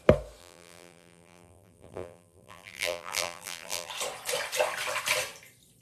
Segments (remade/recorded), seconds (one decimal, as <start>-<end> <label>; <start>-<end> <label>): 0.0-0.4 recorded; 0.4-3.9 remade; 3.9-5.8 recorded